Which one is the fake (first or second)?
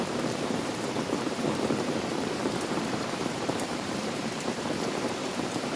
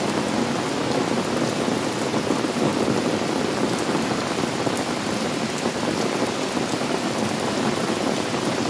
first